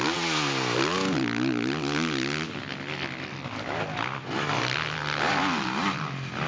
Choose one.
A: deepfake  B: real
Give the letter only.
B